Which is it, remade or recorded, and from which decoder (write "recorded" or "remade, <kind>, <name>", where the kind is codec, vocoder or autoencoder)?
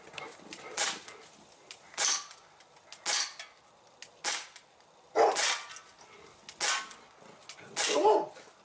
recorded